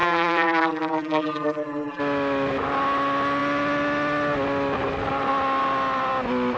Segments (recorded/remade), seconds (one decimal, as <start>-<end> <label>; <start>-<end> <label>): 0.0-2.0 remade; 2.0-6.6 recorded

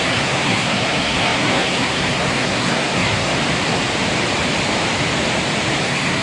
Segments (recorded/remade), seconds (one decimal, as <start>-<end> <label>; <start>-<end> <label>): 0.0-3.3 remade; 3.3-5.8 recorded; 5.8-6.2 remade

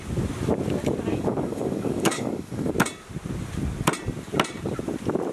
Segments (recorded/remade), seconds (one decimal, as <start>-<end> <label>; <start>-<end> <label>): 0.0-1.1 recorded; 1.1-2.7 remade; 2.7-5.3 recorded

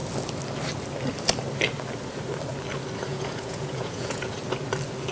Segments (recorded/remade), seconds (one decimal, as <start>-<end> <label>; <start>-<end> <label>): 0.0-3.1 recorded; 3.1-4.4 remade; 4.4-5.1 recorded

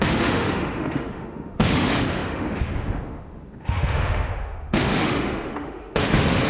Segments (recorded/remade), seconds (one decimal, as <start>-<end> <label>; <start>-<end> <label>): 0.0-6.5 remade

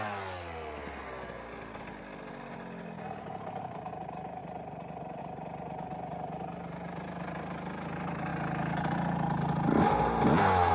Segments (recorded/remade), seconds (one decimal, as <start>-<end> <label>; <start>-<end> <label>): 0.0-10.7 recorded